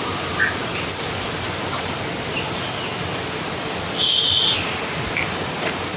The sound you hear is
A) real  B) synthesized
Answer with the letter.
A